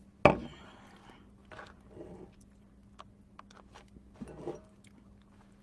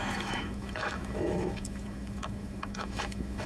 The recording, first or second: first